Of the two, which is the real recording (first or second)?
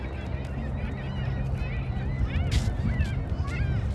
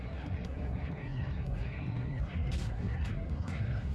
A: first